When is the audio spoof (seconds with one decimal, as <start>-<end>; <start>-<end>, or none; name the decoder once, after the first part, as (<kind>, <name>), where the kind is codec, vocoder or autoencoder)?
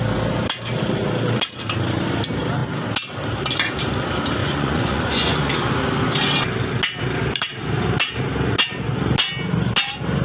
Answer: 4.4-5.7 (vocoder, Vocos)